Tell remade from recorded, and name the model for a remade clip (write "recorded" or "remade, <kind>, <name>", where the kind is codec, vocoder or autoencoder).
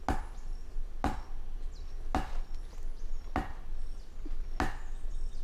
recorded